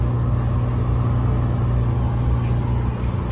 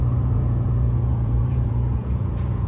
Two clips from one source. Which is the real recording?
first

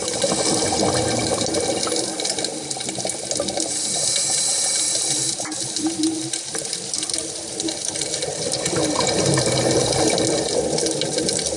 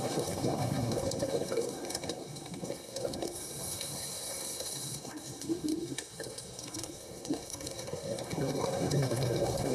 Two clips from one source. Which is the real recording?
first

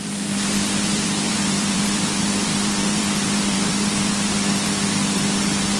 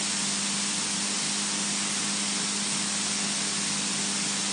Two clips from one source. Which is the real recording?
second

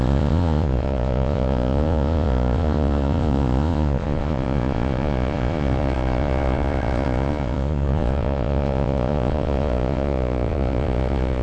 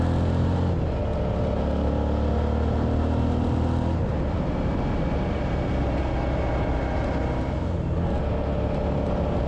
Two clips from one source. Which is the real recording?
second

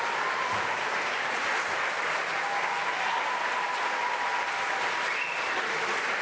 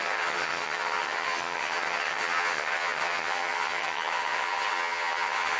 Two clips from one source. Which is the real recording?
first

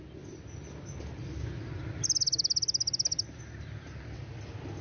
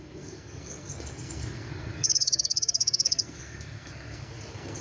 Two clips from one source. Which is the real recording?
first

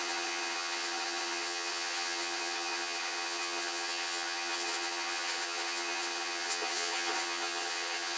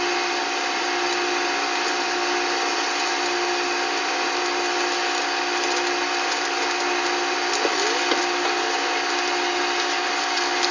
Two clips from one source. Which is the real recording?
second